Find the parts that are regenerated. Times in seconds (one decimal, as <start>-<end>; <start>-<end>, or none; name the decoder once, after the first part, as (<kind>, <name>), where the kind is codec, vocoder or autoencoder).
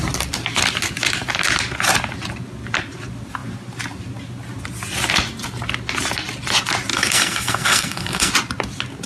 6.9-8.3 (codec, SNAC)